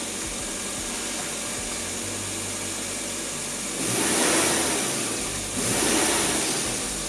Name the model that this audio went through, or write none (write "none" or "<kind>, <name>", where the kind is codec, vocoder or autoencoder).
none